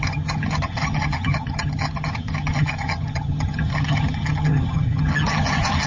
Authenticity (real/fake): fake